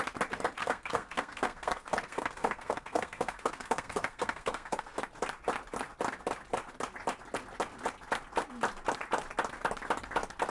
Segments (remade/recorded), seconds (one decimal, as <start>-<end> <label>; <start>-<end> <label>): 0.0-0.6 recorded; 0.6-5.0 remade; 5.0-10.5 recorded